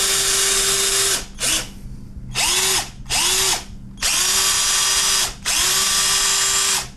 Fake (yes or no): no